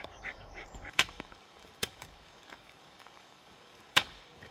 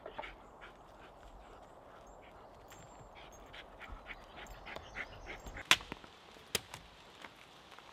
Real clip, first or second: second